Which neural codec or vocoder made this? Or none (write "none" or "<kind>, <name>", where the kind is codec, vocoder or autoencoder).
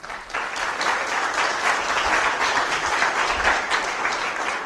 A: none